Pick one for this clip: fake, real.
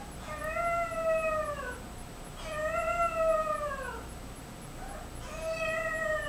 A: real